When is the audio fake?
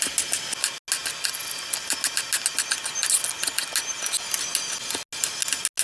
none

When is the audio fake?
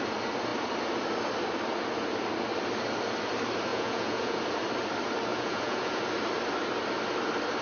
3.7-4.4 (vocoder, Vocos); 5.3-6.0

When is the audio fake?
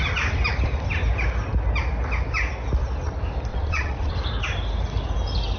3.5-4.1 (vocoder, Vocos)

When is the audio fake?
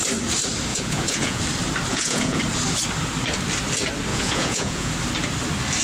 0.7-1.4 (vocoder, Vocos); 1.9-2.4; 4.1-4.9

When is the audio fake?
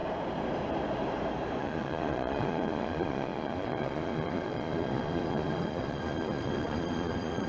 1.6-7.5 (vocoder, Vocos)